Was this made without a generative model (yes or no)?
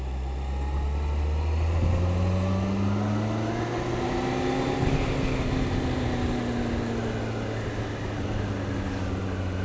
yes